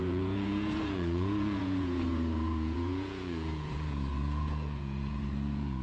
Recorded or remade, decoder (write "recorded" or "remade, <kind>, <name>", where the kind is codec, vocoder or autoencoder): remade, vocoder, Vocos